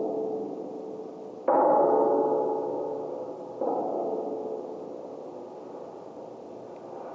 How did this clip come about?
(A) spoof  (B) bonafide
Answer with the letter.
B